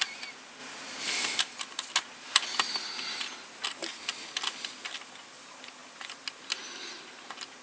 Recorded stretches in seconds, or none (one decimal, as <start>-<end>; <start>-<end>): 0.0-7.6

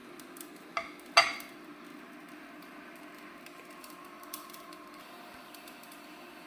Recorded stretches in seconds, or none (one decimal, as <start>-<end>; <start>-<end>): 0.0-1.5; 1.9-3.8

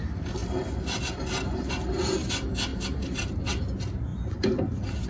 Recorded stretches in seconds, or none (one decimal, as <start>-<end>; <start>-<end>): 0.0-2.7; 3.3-5.1

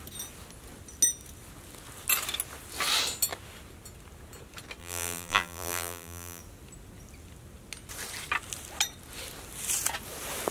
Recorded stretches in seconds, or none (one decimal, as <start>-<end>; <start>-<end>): 0.0-4.8; 6.4-10.5

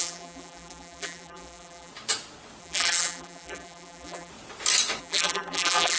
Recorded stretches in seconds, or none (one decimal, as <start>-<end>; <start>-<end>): 1.9-2.6; 4.3-5.0